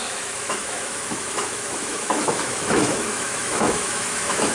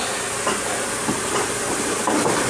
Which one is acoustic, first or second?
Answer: second